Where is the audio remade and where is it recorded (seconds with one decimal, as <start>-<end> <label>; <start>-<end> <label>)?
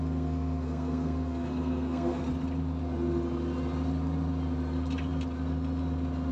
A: 0.0-2.2 remade; 2.2-6.3 recorded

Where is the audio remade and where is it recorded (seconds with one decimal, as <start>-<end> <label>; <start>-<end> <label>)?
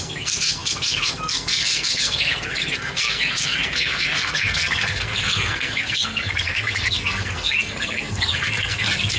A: 0.0-9.2 remade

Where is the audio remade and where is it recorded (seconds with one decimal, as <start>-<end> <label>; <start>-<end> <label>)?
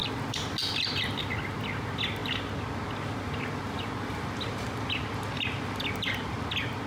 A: 0.0-6.9 recorded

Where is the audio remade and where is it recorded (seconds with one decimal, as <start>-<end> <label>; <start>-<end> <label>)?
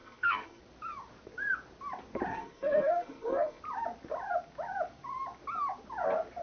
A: 0.0-0.6 remade; 0.6-2.3 recorded; 2.3-3.6 remade; 3.6-6.4 recorded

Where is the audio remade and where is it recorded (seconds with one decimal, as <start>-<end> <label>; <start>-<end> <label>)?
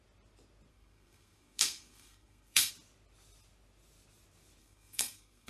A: 0.0-0.7 recorded; 0.7-2.7 remade; 2.7-4.6 recorded; 4.6-5.5 remade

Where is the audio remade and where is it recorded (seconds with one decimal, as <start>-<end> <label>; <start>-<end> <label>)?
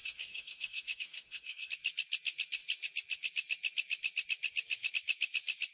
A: 0.0-1.7 remade; 1.7-5.7 recorded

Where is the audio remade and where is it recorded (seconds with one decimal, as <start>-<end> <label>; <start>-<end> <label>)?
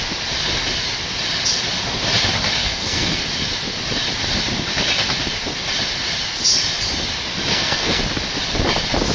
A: 0.0-2.6 recorded; 2.6-3.2 remade; 3.2-7.5 recorded; 7.5-8.0 remade; 8.0-9.1 recorded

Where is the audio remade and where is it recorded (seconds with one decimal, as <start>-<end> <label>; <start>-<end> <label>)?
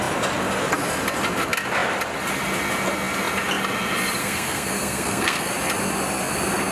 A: 0.0-4.2 recorded; 4.2-5.5 remade; 5.5-6.7 recorded